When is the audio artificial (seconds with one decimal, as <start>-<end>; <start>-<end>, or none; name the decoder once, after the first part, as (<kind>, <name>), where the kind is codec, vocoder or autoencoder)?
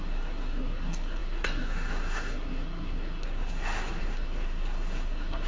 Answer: 0.0-5.5 (codec, SNAC)